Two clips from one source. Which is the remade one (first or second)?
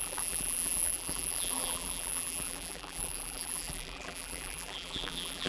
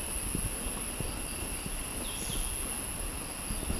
first